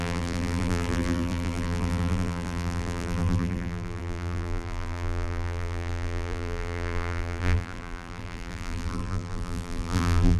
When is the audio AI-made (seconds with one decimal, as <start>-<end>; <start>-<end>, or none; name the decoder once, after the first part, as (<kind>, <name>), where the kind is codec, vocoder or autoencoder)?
0.0-10.4 (vocoder, BigVGAN v2)